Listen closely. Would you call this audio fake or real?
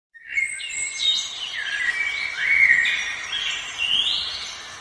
real